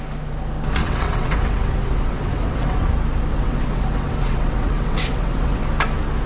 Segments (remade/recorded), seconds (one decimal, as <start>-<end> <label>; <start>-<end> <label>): 0.0-0.8 recorded; 0.8-2.9 remade; 2.9-3.3 recorded; 3.3-5.6 remade; 5.6-6.3 recorded

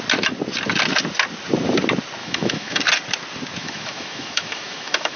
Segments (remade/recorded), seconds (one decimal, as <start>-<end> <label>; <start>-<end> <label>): 0.0-2.2 recorded; 2.2-2.8 remade; 2.8-3.6 recorded; 3.6-5.2 remade

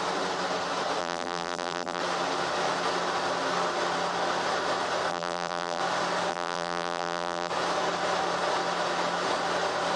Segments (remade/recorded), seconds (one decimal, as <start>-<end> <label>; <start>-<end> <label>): 0.0-1.0 recorded; 1.0-2.0 remade; 2.0-5.1 recorded; 5.1-5.8 remade; 5.8-6.3 recorded; 6.3-7.5 remade; 7.5-10.0 recorded

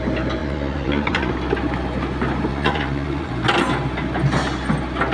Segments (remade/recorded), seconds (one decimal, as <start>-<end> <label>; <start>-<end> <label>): 0.0-0.4 recorded; 0.4-1.3 remade; 1.3-2.5 recorded; 2.5-3.3 remade; 3.3-5.1 recorded

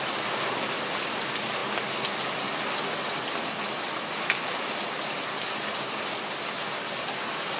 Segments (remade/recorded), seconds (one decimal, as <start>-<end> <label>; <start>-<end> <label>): 0.0-7.6 recorded

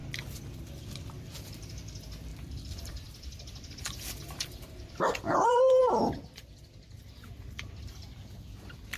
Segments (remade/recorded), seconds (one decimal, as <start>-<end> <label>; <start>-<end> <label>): 0.0-2.3 recorded; 2.3-5.8 remade; 5.8-9.0 recorded